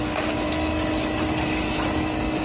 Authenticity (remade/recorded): recorded